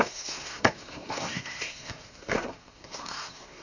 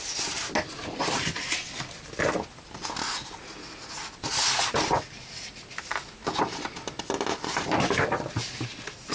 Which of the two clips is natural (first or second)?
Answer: second